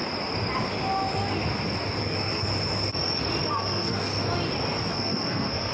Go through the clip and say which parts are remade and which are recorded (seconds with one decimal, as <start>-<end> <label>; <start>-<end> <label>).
0.0-2.0 recorded; 2.0-2.5 remade; 2.5-3.5 recorded; 3.5-4.1 remade; 4.1-4.9 recorded; 4.9-5.7 remade